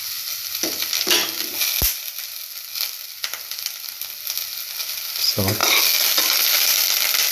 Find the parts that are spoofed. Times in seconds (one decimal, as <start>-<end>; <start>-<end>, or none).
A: none